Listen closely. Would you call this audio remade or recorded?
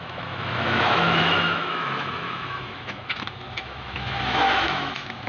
remade